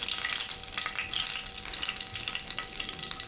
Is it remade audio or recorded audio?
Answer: recorded